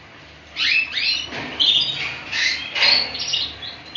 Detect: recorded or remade remade